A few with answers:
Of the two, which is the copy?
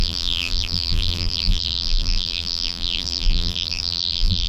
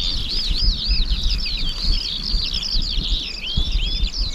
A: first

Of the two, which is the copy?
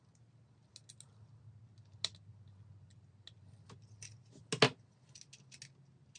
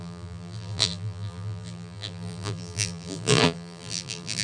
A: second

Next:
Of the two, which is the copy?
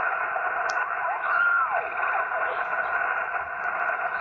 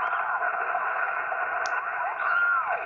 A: first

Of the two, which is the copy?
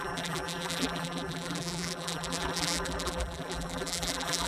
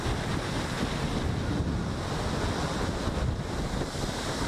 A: first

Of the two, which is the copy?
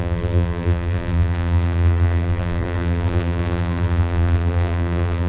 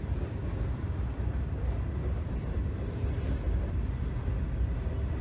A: first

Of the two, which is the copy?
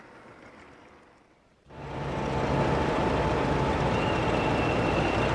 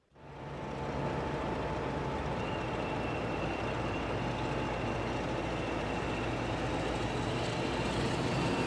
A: first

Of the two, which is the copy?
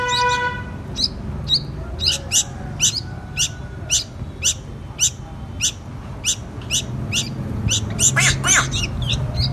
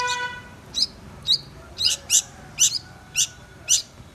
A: second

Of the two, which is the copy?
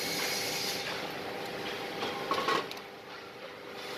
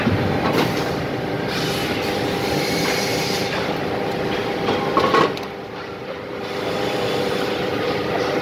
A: second